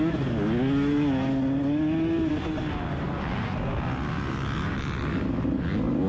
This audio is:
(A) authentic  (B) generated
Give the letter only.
A